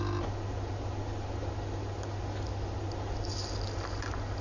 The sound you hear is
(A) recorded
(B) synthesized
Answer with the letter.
A